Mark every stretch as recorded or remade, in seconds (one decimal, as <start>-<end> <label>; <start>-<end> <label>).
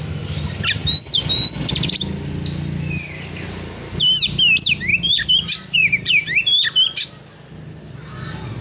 0.0-4.9 recorded; 4.9-7.1 remade; 7.1-8.6 recorded